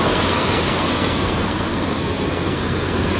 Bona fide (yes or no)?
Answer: no